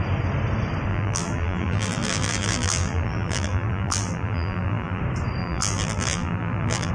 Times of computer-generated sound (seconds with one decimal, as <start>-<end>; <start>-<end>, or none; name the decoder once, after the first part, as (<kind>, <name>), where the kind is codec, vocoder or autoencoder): 0.9-5.0 (vocoder, BigVGAN v2); 5.4-6.9